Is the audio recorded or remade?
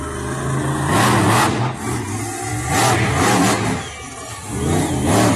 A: recorded